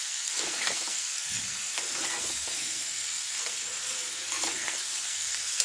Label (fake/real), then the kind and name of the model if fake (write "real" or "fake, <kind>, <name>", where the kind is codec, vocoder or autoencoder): fake, codec, SNAC